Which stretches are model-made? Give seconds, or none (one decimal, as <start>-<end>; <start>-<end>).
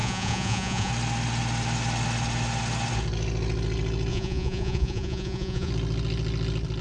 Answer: 0.0-0.9; 4.1-5.7